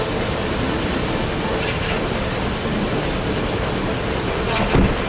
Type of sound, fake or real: real